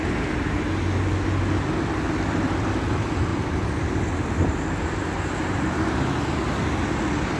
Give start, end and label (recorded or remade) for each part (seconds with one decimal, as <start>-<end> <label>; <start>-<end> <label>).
0.0-3.3 recorded; 3.3-6.2 remade; 6.2-7.4 recorded